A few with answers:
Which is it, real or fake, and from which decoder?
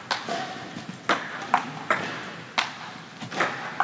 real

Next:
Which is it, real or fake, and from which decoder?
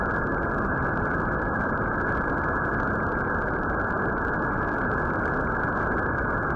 real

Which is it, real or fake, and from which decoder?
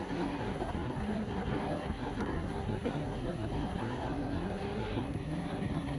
fake, codec, SNAC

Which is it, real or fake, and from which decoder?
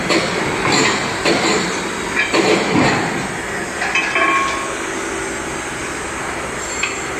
real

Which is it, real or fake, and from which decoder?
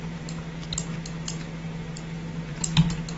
real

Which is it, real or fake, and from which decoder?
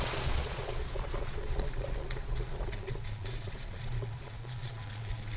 fake, vocoder, Vocos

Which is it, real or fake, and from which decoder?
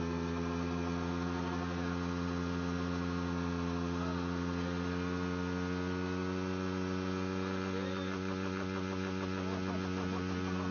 real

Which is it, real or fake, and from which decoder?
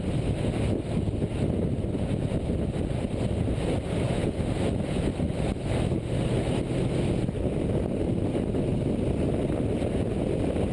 real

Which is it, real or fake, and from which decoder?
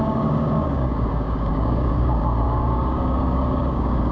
fake, codec, DAC